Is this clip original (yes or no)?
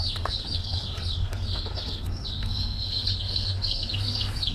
no